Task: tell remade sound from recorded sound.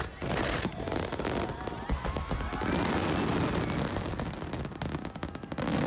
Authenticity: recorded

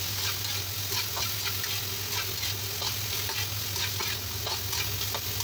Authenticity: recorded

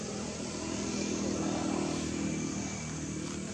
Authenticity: recorded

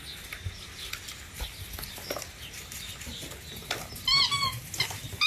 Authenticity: recorded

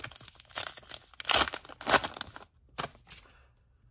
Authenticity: recorded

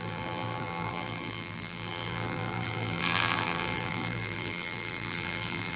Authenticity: remade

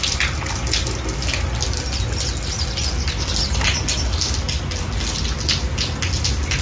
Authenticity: recorded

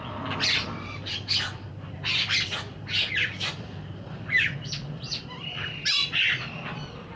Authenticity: remade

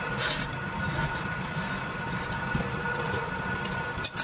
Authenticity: recorded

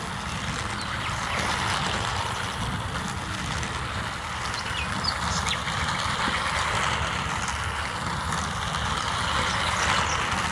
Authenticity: recorded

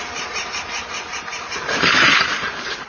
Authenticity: remade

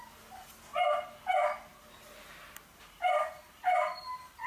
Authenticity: recorded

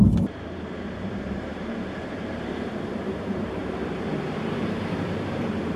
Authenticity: remade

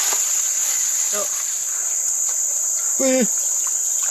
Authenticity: recorded